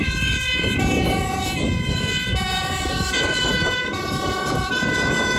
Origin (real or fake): fake